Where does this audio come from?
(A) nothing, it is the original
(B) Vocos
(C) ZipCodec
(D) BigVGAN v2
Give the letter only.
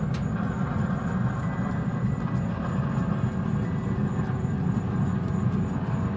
A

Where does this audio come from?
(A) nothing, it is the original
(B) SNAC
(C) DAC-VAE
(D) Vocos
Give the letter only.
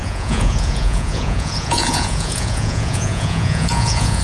D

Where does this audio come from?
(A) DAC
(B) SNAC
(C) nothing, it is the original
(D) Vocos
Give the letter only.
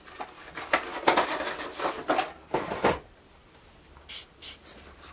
C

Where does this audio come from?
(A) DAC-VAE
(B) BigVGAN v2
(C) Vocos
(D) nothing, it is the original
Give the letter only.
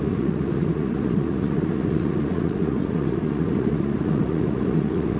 C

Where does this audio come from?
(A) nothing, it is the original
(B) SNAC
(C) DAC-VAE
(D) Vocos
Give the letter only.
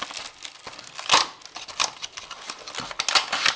A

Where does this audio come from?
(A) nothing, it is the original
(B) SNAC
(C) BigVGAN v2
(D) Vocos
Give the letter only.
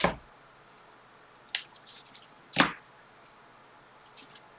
A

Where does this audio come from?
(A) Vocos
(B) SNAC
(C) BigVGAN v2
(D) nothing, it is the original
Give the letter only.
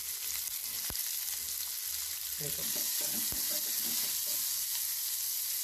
D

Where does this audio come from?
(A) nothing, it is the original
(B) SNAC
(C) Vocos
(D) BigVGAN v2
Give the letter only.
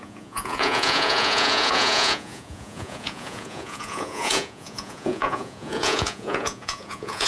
C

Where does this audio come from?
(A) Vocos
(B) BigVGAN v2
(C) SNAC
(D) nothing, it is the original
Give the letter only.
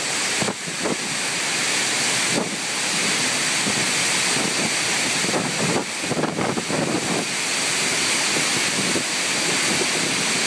D